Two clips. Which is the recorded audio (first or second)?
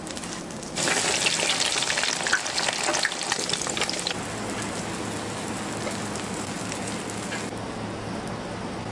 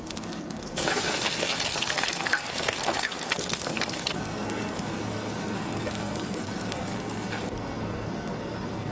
first